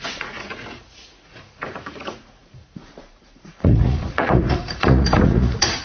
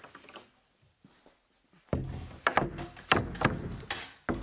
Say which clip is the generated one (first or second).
first